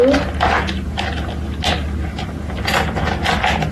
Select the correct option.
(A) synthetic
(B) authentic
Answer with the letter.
B